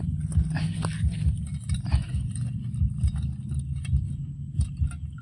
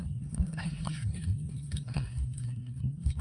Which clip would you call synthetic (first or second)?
second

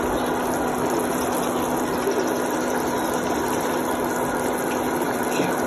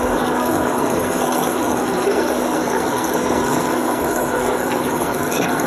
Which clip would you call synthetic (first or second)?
second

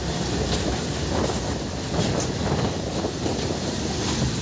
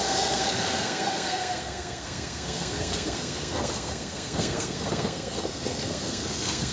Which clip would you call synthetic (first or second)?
second